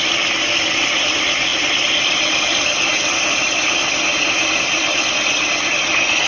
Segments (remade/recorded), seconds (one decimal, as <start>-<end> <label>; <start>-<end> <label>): 0.0-6.3 recorded